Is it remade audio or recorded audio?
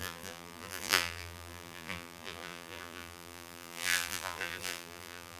remade